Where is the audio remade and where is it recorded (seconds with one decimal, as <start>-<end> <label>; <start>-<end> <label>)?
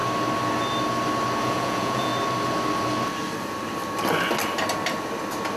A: 0.0-1.4 recorded; 1.4-2.1 remade; 2.1-5.6 recorded